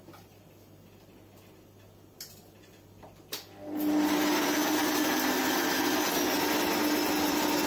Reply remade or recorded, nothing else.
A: recorded